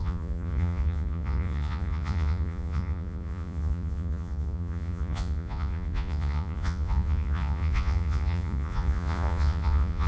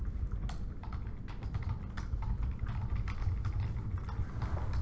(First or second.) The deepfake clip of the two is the first